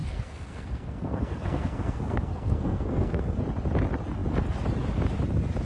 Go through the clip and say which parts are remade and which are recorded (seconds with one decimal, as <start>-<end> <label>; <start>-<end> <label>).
0.0-3.4 remade; 3.4-5.6 recorded